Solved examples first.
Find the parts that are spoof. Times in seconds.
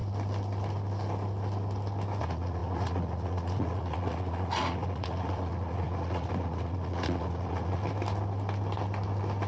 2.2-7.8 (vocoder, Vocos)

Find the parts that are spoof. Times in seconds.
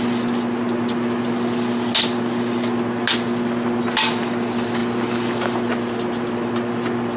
none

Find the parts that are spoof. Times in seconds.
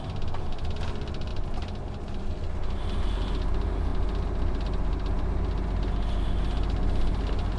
none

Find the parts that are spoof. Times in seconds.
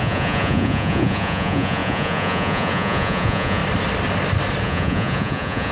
0.0-3.6 (vocoder, Vocos); 4.6-5.7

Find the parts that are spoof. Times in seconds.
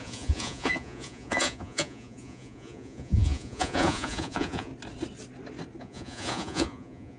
0.0-4.7 (vocoder, Vocos); 5.8-7.2